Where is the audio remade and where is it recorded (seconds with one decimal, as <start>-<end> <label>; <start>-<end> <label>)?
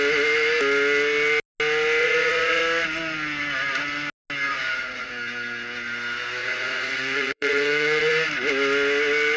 0.0-2.0 recorded; 2.0-2.6 remade; 2.6-4.5 recorded; 4.5-5.1 remade; 5.1-6.4 recorded; 6.4-8.1 remade; 8.1-9.4 recorded